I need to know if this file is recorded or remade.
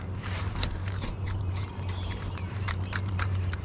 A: remade